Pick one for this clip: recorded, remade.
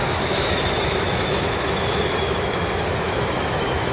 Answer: remade